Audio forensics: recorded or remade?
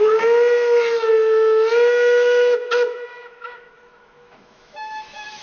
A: remade